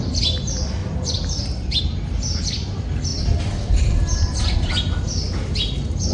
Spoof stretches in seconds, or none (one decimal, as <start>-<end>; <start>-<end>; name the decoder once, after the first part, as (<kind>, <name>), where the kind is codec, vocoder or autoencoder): none